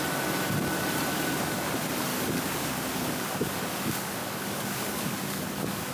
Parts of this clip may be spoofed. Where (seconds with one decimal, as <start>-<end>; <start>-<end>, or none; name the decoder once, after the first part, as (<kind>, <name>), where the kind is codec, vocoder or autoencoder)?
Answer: 1.1-1.7 (codec, DAC); 2.1-5.9